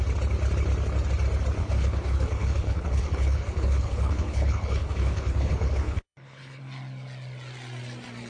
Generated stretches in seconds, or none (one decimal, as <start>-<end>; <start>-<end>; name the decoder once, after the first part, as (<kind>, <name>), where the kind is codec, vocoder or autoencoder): 1.6-6.6 (codec, HILCodec)